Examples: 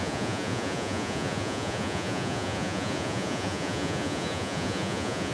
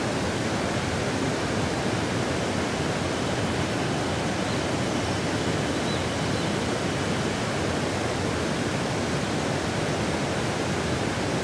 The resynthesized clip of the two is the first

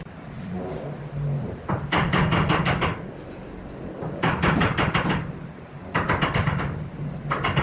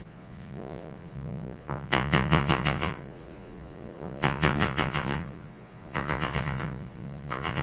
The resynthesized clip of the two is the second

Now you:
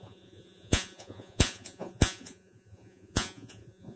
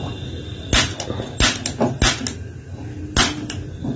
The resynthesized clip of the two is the first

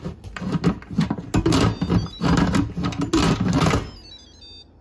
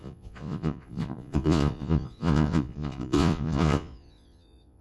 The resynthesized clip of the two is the second